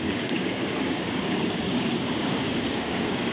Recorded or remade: remade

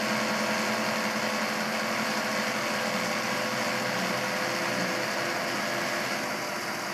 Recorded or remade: recorded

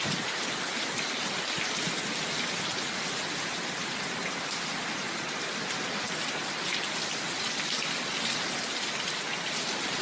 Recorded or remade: recorded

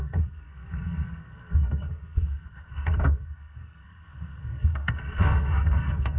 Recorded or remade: remade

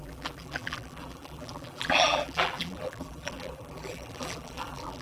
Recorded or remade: remade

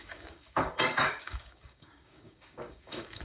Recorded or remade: remade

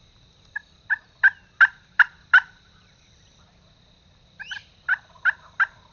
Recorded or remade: remade